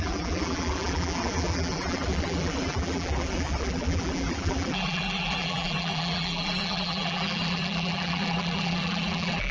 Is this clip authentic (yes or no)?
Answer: no